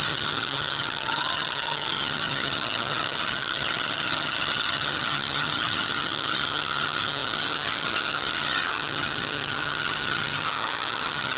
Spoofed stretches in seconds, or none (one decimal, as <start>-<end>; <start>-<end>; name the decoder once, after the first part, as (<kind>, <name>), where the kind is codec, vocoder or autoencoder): 0.0-11.4 (vocoder, HiFi-GAN)